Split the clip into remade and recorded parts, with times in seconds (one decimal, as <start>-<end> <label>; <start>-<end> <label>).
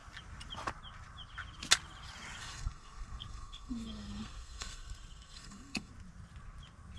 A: 0.0-2.4 recorded; 2.4-5.9 remade; 5.9-7.0 recorded